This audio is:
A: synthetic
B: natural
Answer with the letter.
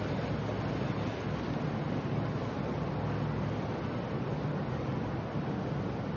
B